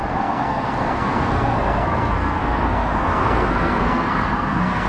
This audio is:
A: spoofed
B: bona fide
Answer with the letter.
A